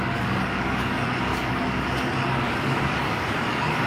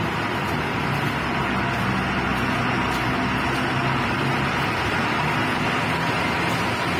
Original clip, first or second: second